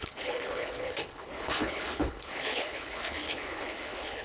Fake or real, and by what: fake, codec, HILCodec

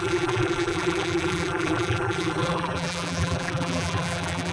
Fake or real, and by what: fake, vocoder, BigVGAN v2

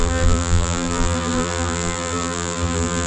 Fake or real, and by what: fake, vocoder, BigVGAN v2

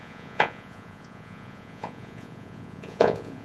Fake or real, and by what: fake, vocoder, Vocos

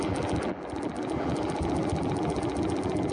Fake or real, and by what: fake, vocoder, BigVGAN v2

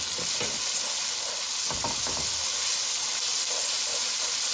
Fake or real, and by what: real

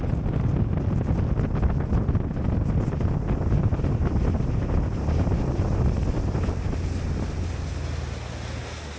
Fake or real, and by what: real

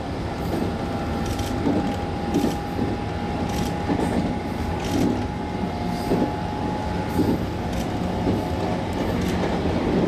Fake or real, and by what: real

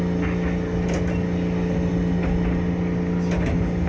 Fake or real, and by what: real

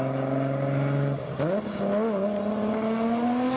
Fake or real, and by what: real